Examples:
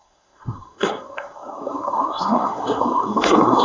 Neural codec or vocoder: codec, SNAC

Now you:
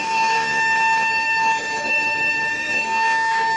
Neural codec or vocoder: autoencoder, DAC-VAE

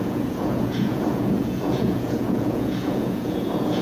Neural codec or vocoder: vocoder, Vocos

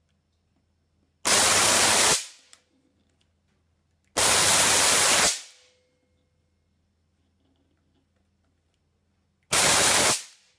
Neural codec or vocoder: none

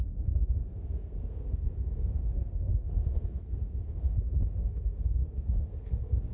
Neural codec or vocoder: codec, SNAC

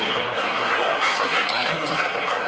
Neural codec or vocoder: codec, SNAC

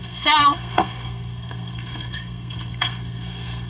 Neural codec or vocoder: codec, SNAC